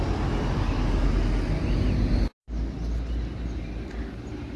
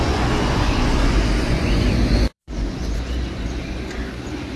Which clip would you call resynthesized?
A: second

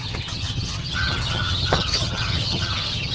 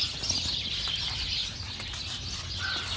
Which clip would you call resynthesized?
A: first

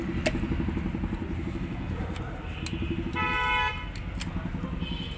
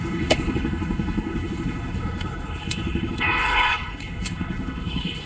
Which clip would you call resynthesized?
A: second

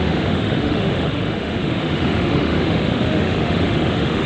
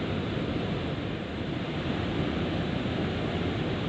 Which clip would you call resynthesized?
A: first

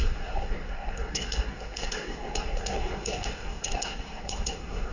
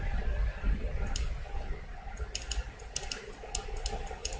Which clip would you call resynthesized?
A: first